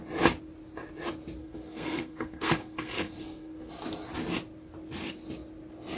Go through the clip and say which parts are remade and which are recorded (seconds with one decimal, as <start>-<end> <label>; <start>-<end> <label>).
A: 0.0-1.4 recorded; 1.4-3.7 remade; 3.7-6.0 recorded